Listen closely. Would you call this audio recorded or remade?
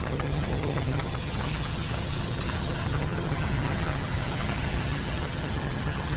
remade